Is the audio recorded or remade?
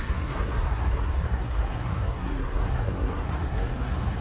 remade